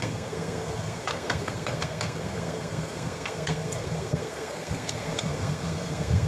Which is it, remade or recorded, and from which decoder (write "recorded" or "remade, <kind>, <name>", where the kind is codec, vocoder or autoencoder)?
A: remade, codec, SNAC